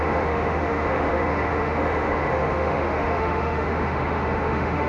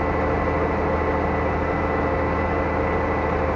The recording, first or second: second